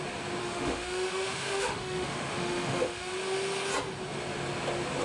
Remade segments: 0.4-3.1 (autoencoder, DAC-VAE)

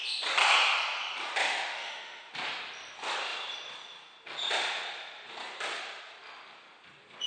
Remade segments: 1.5-2.3 (autoencoder, DAC-VAE)

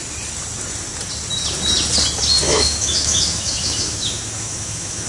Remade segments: 2.4-5.1 (autoencoder, DAC-VAE)

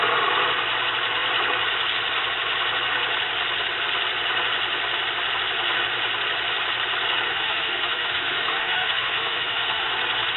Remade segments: 7.3-9.9 (autoencoder, DAC-VAE)

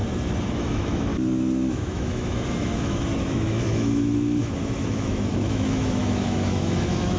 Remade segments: 0.5-1.1 (autoencoder, DAC-VAE); 1.7-7.2

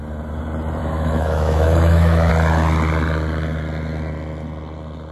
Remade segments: 0.8-2.3 (autoencoder, DAC-VAE)